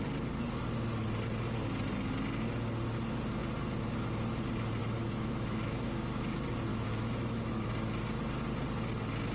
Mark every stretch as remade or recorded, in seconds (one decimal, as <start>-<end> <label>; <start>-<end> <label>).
0.0-4.8 recorded; 4.8-6.2 remade; 6.2-6.7 recorded; 6.7-7.7 remade; 7.7-9.3 recorded